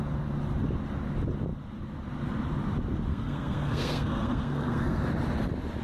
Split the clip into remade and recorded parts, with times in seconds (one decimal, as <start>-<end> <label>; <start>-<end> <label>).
0.0-3.1 recorded; 3.1-5.0 remade; 5.0-5.8 recorded